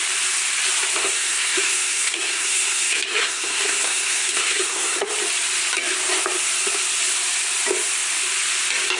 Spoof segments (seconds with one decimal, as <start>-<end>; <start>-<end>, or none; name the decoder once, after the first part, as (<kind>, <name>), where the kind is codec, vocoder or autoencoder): 1.0-5.1 (codec, SNAC)